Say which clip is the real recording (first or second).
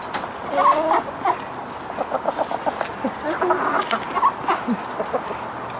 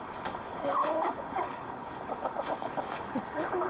first